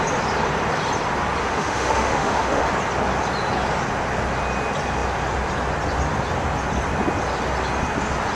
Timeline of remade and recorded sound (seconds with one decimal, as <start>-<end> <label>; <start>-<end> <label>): 0.0-1.4 recorded; 1.4-2.7 remade; 2.7-8.4 recorded